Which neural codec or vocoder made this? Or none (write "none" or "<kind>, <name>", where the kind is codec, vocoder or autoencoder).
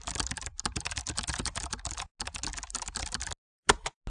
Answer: none